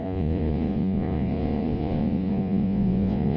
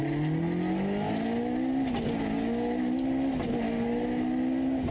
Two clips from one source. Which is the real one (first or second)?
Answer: second